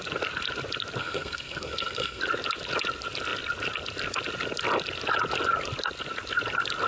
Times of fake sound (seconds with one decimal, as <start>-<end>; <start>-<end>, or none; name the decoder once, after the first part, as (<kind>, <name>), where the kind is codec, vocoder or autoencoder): 1.0-2.2 (codec, SNAC)